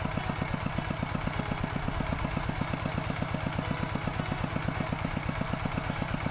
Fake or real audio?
real